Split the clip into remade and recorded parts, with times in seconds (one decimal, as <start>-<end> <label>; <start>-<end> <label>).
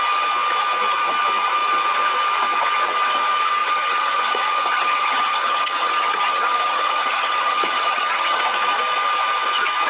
0.0-3.6 recorded; 3.6-8.4 remade; 8.4-9.9 recorded